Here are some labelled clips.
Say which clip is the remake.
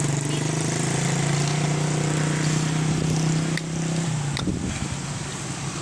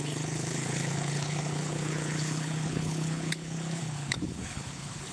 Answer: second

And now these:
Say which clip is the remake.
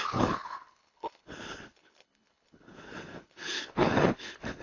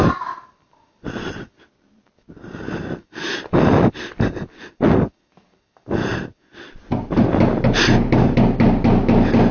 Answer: first